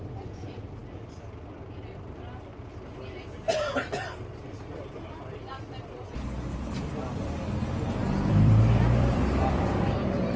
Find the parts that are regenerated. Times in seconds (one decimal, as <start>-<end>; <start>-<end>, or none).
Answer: 6.5-7.3; 8.0-10.4